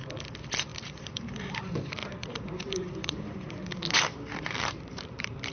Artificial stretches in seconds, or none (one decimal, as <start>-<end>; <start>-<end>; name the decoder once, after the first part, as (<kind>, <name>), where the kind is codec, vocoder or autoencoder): 0.7-1.6 (vocoder, BigVGAN v2); 2.0-5.5